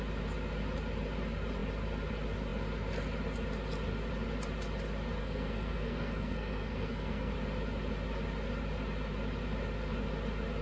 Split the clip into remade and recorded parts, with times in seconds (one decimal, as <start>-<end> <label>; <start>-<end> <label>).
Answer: 0.0-5.2 recorded; 5.2-7.3 remade; 7.3-10.6 recorded